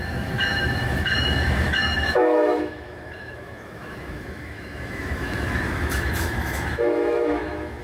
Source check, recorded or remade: remade